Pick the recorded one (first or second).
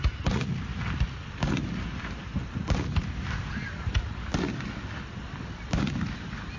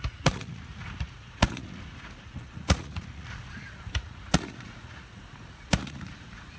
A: first